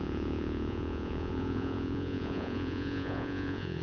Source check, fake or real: fake